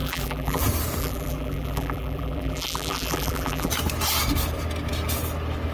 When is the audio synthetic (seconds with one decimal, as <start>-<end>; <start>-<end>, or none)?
0.0-0.6; 1.0-3.7